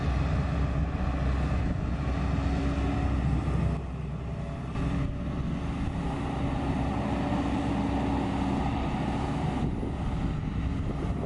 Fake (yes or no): no